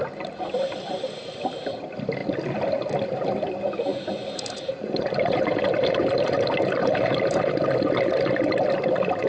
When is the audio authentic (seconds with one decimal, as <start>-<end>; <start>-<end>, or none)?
0.0-3.9; 6.3-6.8; 7.4-9.3